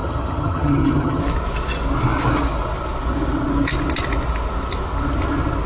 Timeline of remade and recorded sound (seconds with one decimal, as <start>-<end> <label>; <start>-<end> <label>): 0.0-1.2 remade; 1.2-5.7 recorded